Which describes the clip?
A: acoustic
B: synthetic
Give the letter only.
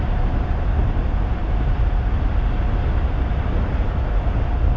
A